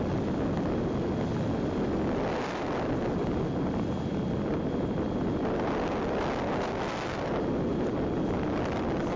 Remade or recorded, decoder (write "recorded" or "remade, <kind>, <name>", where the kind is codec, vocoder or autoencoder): recorded